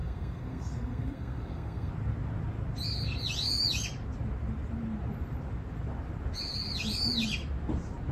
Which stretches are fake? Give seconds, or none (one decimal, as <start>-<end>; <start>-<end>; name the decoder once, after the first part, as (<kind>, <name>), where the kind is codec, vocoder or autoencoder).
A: 0.0-1.9 (codec, SNAC)